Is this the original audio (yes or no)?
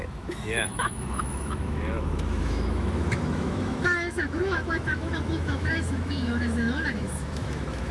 no